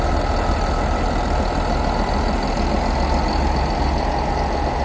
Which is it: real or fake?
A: real